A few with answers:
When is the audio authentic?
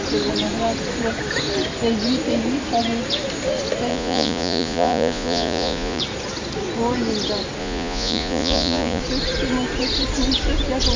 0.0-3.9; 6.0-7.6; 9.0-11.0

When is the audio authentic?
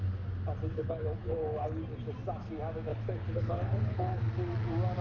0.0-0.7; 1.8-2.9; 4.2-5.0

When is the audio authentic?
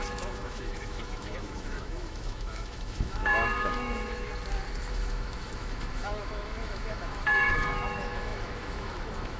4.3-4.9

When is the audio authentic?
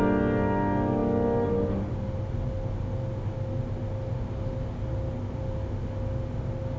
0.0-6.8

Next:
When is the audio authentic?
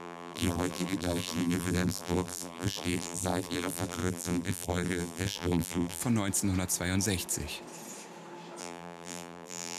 6.0-8.6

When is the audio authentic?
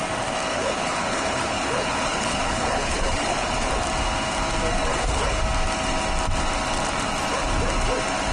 0.0-0.5; 3.7-4.9; 5.4-8.3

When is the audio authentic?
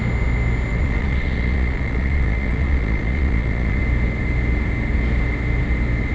0.0-0.7; 3.8-6.1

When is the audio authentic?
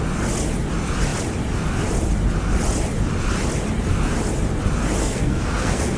0.0-5.0